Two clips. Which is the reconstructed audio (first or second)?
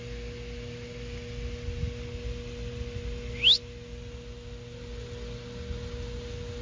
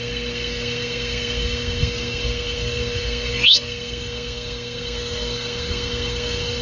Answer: second